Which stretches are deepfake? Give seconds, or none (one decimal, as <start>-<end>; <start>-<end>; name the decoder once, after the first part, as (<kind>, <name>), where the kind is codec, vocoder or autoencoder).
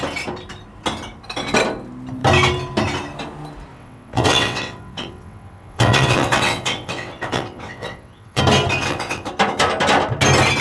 3.7-8.4 (vocoder, WaveNeXt); 8.8-9.3